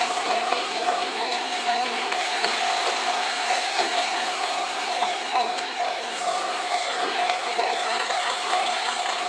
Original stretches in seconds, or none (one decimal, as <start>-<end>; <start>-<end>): 2.5-3.1